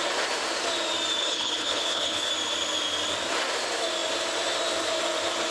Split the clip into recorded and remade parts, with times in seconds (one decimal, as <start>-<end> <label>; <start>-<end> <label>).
0.0-1.2 recorded; 1.2-2.3 remade; 2.3-5.5 recorded